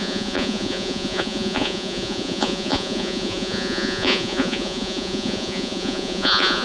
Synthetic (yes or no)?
yes